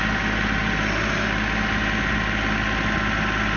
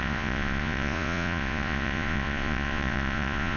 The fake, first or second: second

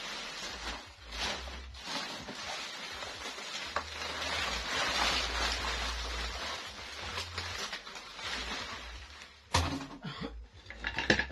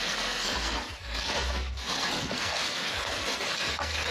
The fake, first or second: second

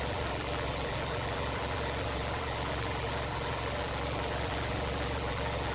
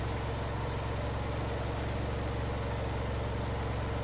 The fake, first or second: first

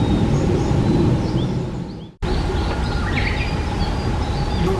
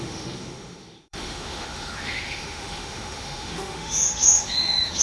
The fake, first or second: second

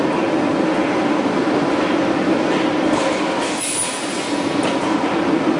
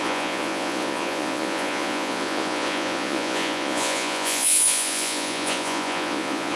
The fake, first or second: second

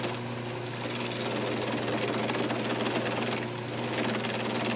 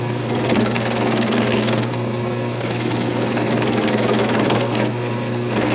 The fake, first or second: second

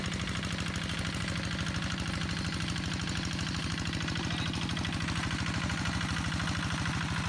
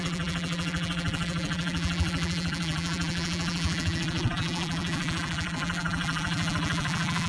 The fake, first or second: second